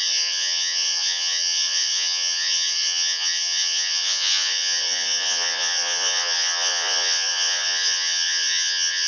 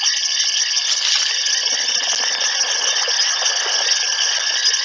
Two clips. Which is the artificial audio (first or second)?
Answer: first